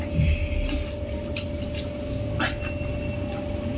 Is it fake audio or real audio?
real